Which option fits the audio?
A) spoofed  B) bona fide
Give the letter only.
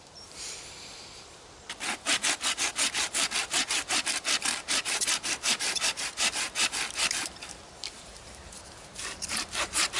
A